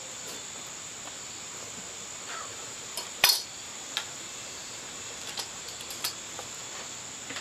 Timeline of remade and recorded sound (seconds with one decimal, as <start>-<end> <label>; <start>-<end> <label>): 0.0-2.5 recorded; 2.5-6.0 remade; 6.0-7.4 recorded